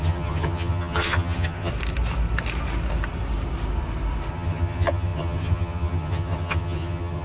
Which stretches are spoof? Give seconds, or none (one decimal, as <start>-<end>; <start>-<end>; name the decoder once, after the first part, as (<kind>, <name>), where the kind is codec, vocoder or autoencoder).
0.0-1.7 (vocoder, HiFi-GAN); 4.3-7.2